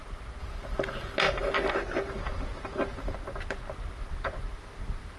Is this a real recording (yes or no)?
yes